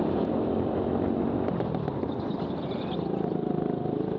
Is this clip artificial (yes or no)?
no